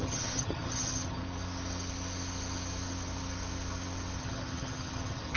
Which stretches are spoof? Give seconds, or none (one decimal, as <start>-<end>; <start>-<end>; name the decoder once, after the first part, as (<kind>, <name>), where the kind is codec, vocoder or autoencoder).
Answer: 0.0-1.2 (vocoder, HiFi-GAN); 4.2-5.4